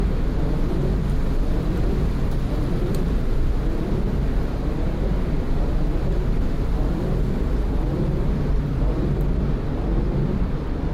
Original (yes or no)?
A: yes